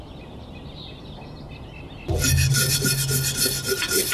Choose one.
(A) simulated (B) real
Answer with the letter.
B